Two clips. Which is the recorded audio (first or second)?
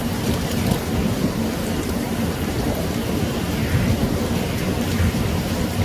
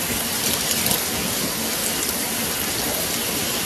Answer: second